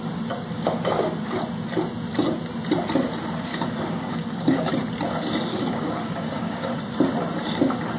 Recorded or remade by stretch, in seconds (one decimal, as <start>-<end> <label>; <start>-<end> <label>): 0.0-0.5 recorded; 0.5-1.4 remade; 1.4-3.5 recorded; 3.5-4.7 remade; 4.7-5.5 recorded; 5.5-6.7 remade; 6.7-8.0 recorded

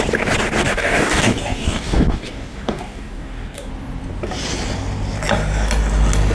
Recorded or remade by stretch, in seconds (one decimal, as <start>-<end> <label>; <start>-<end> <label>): 0.0-0.6 recorded; 0.6-3.7 remade; 3.7-6.3 recorded

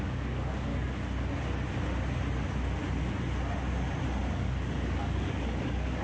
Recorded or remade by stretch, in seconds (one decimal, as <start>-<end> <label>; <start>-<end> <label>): 0.0-0.7 remade; 0.7-4.3 recorded; 4.3-6.0 remade